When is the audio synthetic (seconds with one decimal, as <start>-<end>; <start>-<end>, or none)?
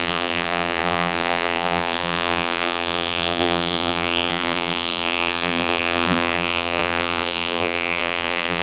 0.0-8.6